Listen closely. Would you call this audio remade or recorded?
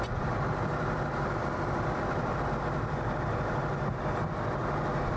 remade